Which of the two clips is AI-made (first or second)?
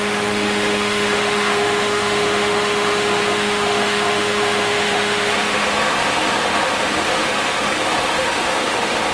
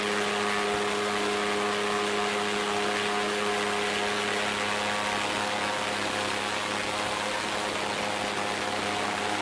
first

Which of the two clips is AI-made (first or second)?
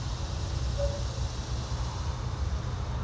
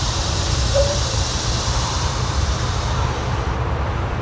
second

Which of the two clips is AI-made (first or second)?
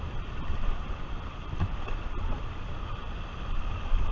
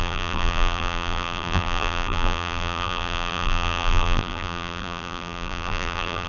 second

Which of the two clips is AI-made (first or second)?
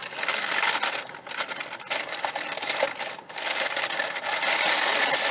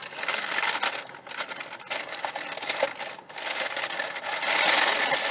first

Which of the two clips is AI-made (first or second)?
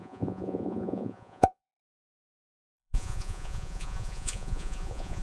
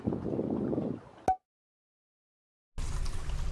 first